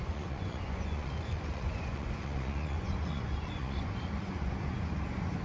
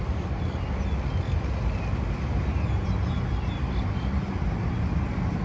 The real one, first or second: second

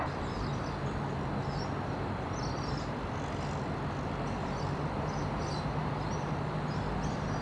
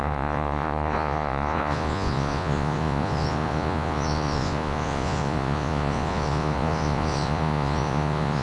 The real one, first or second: first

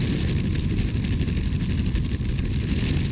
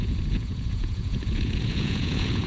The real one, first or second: first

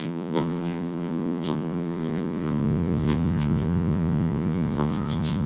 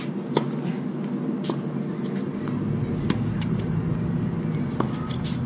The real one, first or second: second